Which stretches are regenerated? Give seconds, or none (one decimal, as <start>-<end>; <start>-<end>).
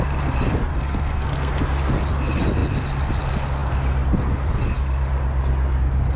0.7-1.5